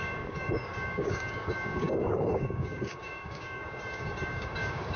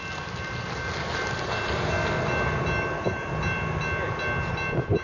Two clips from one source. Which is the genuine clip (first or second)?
second